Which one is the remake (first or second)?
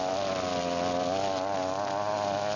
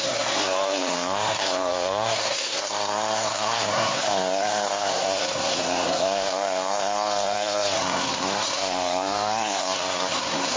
second